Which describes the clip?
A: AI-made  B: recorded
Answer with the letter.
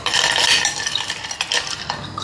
A